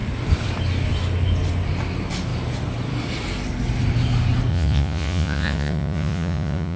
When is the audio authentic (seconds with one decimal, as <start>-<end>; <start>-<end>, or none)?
0.0-4.5